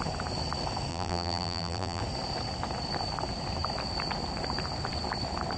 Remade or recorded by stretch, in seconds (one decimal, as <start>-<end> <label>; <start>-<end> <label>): 0.0-0.9 recorded; 0.9-2.0 remade; 2.0-5.6 recorded